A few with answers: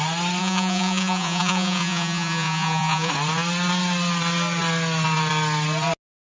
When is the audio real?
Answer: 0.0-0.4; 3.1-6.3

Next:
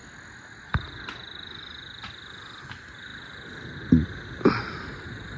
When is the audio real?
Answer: 0.0-5.4

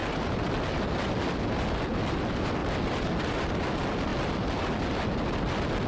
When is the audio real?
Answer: 1.2-5.9

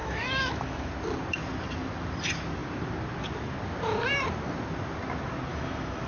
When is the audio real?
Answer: 0.9-5.5